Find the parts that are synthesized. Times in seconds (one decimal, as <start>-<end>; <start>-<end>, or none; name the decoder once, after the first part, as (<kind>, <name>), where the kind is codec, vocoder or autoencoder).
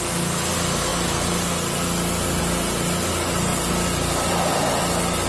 none